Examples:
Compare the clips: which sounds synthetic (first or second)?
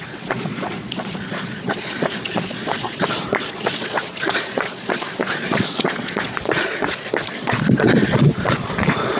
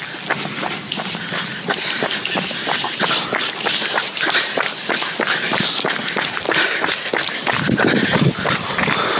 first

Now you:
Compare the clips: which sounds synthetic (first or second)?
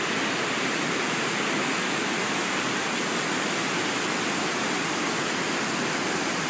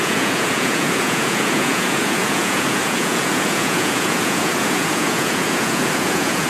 second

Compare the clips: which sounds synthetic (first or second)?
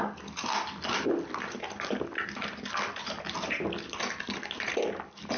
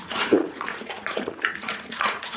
second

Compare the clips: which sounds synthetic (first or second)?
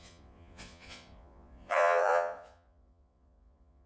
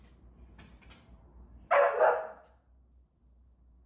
first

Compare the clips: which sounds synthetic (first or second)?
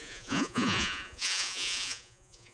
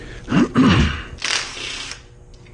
first